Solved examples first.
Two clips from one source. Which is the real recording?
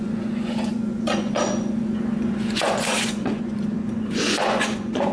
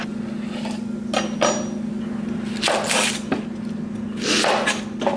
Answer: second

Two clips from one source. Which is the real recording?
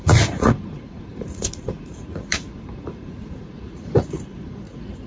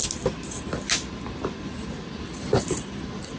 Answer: second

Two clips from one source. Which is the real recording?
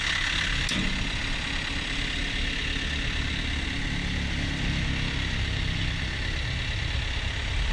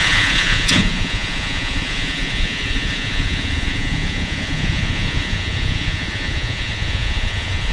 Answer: first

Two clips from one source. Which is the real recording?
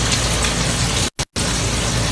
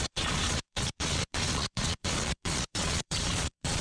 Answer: first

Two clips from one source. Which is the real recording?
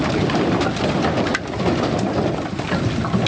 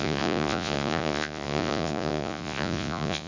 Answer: first